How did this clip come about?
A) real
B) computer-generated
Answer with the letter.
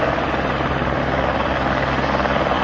A